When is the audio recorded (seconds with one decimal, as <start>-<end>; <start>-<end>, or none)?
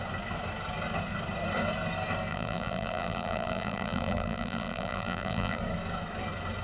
0.0-2.3; 5.6-6.6